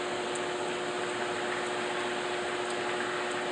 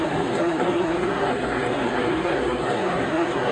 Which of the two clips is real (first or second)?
first